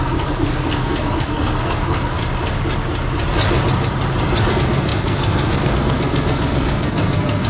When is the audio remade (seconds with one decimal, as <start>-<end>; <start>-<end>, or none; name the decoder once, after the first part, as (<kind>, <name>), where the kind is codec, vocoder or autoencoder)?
0.0-2.2 (codec, SNAC); 4.5-7.5